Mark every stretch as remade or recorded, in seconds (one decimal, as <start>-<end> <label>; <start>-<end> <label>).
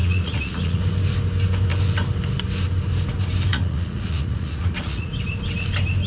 0.0-0.8 remade; 0.8-3.5 recorded; 3.5-5.1 remade; 5.1-6.1 recorded